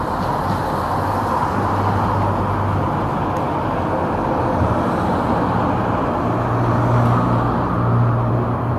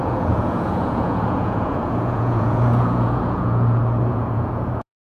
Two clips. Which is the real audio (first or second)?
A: first